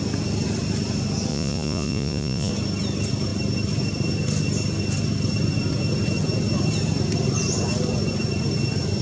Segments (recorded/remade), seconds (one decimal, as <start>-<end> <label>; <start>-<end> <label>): 0.0-1.3 recorded; 1.3-2.5 remade; 2.5-9.0 recorded